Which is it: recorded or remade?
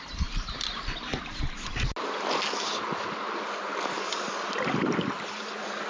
recorded